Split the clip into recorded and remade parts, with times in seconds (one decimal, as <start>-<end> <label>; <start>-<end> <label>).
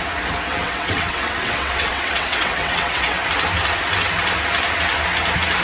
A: 0.0-0.6 recorded; 0.6-3.2 remade; 3.2-5.6 recorded